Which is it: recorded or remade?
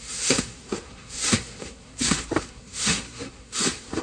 remade